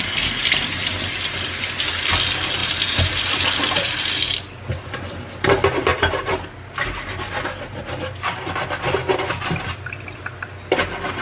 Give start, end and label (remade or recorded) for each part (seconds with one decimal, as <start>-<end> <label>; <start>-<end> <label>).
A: 0.0-11.2 recorded